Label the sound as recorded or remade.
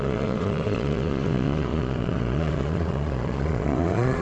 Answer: remade